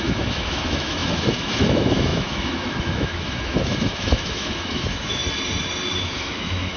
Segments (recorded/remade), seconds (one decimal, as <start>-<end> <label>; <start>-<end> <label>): 0.0-5.2 remade; 5.2-6.0 recorded; 6.0-6.8 remade